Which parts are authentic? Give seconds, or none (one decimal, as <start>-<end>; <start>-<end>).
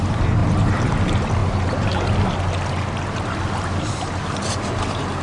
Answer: 0.0-0.4; 0.9-5.2